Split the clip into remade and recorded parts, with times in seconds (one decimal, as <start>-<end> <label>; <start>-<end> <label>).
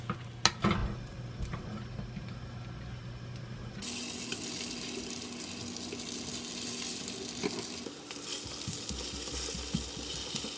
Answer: 0.0-10.6 recorded